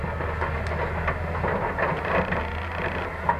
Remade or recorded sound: recorded